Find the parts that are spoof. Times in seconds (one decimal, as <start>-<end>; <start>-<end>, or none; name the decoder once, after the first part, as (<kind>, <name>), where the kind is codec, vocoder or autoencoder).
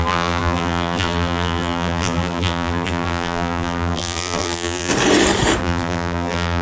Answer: 0.0-4.9 (vocoder, BigVGAN v2); 5.6-6.6